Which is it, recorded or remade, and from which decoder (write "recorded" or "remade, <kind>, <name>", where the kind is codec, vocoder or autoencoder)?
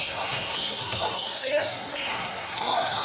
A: remade, codec, SNAC